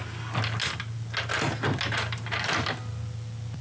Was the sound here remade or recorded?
recorded